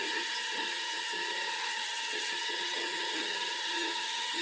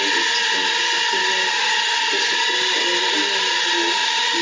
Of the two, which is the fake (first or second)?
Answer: first